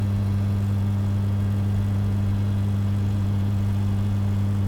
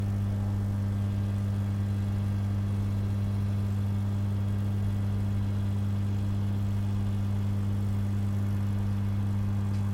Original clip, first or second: second